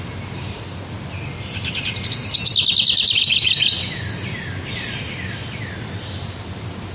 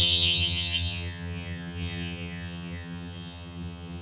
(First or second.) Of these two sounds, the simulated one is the second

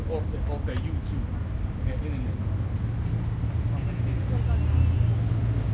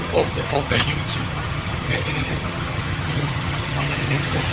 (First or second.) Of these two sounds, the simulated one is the second